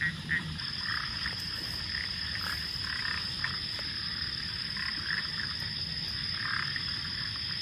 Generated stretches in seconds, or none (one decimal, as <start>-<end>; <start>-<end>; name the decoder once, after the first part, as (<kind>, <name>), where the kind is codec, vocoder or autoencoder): none